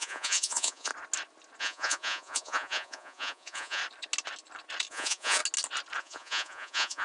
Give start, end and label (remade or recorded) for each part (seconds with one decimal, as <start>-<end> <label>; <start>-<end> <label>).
0.0-0.9 remade; 0.9-1.6 recorded; 1.6-3.8 remade; 3.8-4.9 recorded; 4.9-5.4 remade; 5.4-6.0 recorded; 6.0-7.0 remade